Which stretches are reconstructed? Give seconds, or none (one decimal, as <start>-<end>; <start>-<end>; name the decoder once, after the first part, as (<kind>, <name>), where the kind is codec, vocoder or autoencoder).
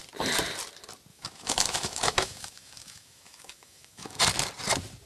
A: 1.1-4.2 (autoencoder, DAC-VAE)